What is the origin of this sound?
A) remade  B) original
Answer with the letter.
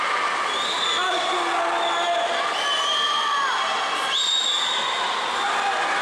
B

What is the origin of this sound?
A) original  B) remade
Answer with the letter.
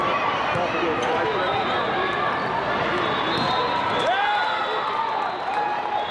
A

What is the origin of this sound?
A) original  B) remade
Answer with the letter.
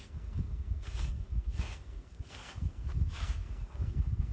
B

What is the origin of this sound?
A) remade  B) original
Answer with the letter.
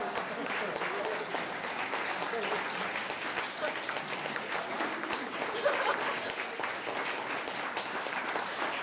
B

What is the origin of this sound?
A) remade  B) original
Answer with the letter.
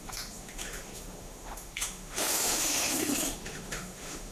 A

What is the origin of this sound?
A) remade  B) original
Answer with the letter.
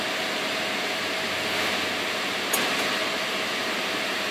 A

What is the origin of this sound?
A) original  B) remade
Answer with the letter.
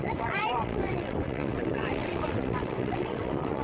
B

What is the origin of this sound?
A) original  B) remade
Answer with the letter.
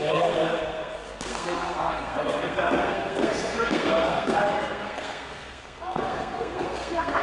B